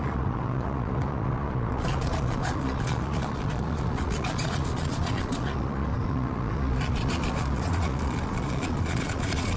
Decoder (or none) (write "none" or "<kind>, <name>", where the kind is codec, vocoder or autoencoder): vocoder, Vocos